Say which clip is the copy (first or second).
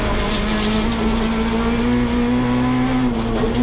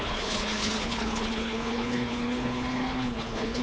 second